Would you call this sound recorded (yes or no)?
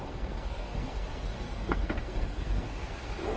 no